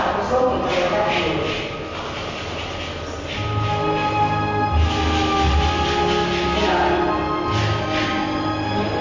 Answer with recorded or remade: recorded